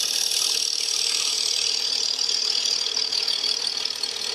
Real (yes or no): yes